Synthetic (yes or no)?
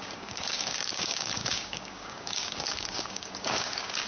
yes